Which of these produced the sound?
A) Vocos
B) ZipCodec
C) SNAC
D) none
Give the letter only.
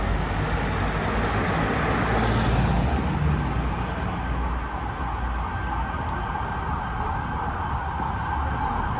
D